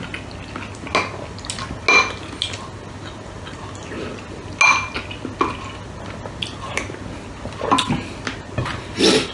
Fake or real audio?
real